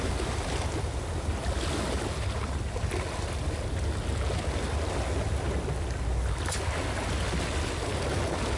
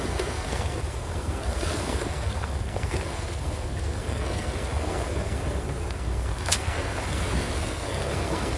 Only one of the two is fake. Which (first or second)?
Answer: second